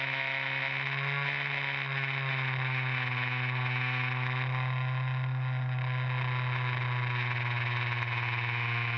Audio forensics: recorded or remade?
recorded